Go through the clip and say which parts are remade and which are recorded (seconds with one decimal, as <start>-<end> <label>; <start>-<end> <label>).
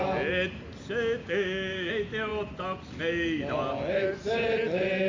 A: 0.0-1.2 recorded; 1.2-1.9 remade; 1.9-5.1 recorded